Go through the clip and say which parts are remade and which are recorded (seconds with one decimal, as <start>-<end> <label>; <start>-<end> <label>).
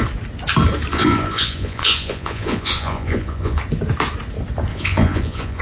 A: 0.0-0.9 recorded; 0.9-3.6 remade; 3.6-4.7 recorded; 4.7-5.6 remade